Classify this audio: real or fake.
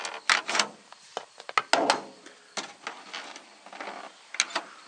real